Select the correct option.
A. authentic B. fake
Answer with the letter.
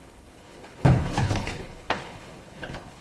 B